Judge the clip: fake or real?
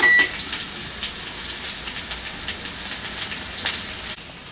real